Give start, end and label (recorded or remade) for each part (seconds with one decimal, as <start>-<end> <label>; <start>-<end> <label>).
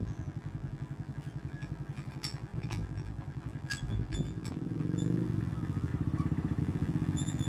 0.0-5.9 remade; 5.9-6.6 recorded; 6.6-7.5 remade